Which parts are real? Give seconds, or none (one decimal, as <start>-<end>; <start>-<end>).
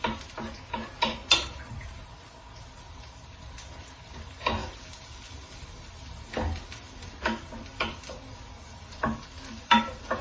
0.0-10.2